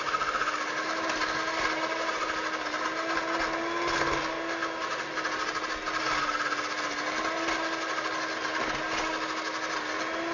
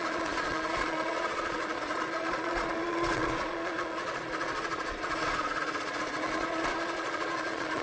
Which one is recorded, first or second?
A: first